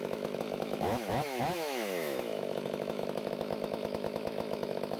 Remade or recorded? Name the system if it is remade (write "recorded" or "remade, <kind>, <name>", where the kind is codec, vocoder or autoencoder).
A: remade, autoencoder, DAC-VAE